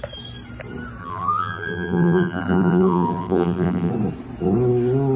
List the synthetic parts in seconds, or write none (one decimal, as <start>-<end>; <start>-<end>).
1.0-3.9